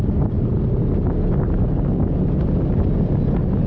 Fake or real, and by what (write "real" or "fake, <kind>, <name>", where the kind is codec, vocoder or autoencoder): real